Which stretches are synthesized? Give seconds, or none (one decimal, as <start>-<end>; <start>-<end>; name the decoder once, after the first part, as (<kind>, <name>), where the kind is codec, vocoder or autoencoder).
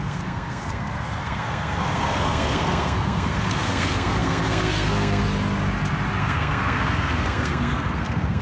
0.0-5.2 (codec, SNAC); 6.2-8.4